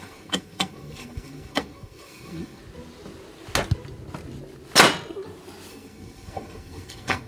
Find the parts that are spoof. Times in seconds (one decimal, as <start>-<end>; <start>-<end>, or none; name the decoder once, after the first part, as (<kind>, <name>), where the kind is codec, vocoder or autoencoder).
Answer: 0.0-2.6 (codec, SNAC); 5.7-7.3